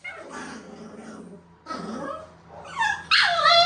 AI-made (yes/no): no